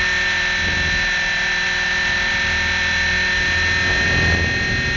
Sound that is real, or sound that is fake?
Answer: real